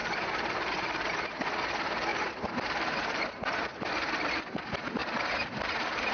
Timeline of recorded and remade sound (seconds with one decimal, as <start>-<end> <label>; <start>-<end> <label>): 0.0-1.1 remade; 1.1-2.1 recorded; 2.1-4.6 remade; 4.6-5.0 recorded; 5.0-6.1 remade